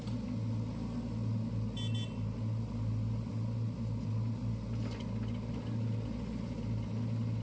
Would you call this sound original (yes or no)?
yes